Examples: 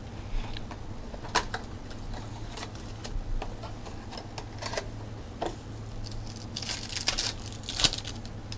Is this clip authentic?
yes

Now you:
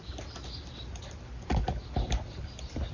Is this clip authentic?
yes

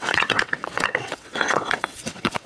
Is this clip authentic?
no